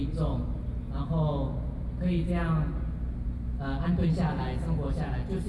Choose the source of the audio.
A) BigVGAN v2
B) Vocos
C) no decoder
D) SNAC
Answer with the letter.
C